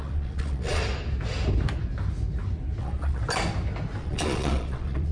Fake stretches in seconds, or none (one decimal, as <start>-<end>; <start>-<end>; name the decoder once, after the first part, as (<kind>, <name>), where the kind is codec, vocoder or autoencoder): 0.0-0.8 (vocoder, Vocos); 2.8-3.2; 4.0-5.1